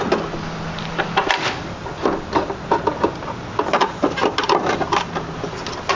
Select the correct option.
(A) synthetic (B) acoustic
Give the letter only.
B